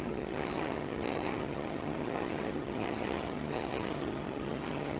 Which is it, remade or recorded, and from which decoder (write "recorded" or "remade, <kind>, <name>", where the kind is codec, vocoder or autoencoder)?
remade, vocoder, HiFi-GAN